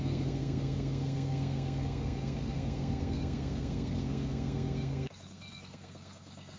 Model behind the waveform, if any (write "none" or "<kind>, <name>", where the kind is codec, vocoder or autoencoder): codec, SNAC